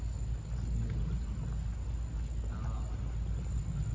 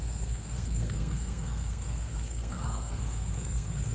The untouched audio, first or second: first